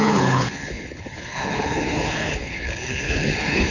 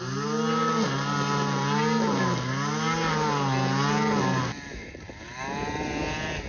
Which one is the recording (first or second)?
second